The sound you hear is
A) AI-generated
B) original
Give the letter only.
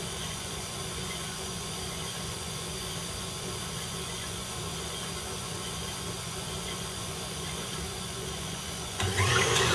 A